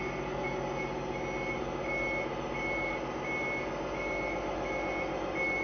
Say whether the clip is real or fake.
real